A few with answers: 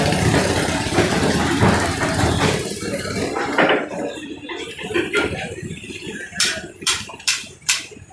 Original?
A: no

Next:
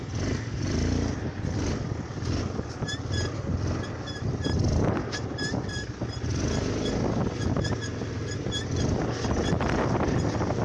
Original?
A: yes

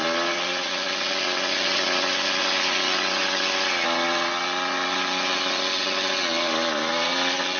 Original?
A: yes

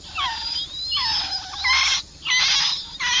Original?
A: yes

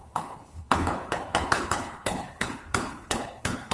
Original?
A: no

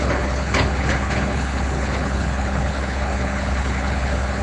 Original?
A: no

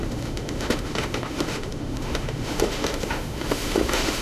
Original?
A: no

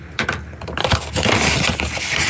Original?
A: yes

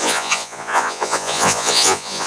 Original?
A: no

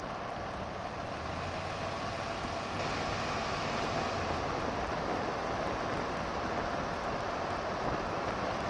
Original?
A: yes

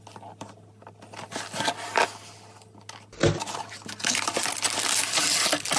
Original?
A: yes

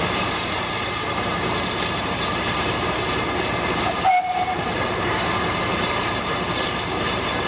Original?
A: no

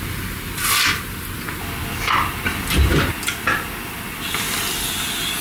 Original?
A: yes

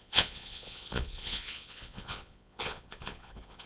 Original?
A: no